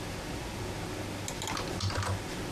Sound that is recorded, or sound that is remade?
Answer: recorded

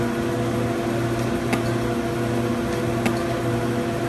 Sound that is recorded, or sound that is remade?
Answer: recorded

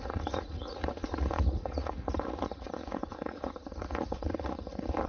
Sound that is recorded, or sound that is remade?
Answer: remade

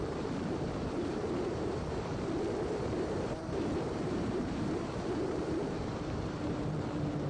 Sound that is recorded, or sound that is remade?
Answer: remade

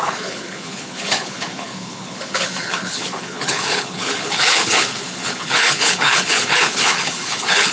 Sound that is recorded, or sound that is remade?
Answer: remade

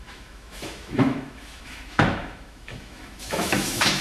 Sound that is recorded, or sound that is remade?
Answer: remade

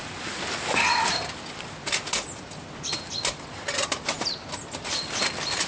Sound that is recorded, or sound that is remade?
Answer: recorded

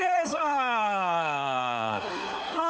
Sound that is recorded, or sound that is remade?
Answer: remade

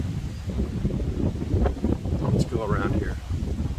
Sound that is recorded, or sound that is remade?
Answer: recorded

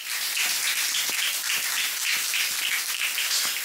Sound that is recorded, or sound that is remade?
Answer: recorded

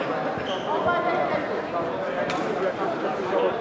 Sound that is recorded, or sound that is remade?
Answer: recorded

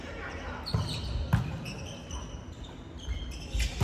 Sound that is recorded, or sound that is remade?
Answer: recorded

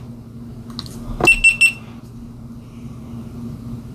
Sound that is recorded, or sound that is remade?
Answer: recorded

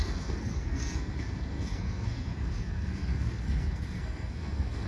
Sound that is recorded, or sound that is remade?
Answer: remade